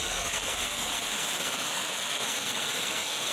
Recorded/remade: remade